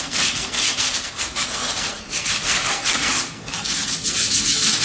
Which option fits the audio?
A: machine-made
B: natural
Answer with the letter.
A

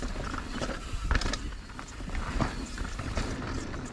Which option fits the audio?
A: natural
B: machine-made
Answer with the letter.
A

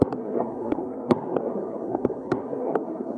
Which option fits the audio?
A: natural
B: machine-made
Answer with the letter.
B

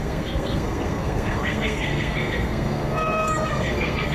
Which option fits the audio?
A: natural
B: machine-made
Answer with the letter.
B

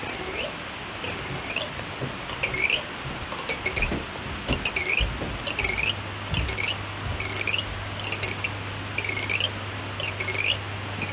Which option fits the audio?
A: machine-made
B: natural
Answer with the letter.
B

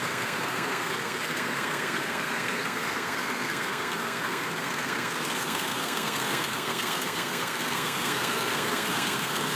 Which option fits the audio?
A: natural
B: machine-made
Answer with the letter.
B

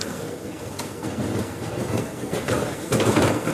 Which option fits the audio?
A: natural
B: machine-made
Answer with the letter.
B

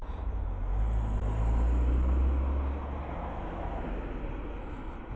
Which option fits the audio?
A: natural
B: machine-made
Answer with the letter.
A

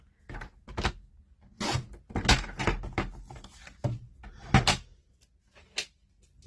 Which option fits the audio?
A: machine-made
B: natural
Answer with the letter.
B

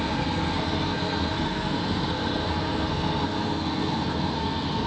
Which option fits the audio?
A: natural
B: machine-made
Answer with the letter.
B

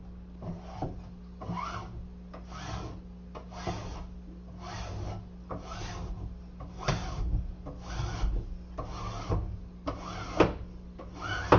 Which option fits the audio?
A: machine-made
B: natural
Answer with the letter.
B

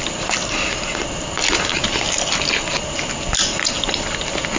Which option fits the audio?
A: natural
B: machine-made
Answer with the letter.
A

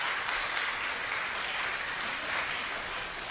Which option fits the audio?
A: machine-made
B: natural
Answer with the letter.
B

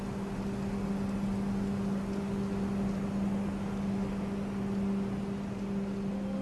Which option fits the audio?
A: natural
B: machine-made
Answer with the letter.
A